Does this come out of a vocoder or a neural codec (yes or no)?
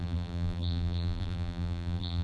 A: yes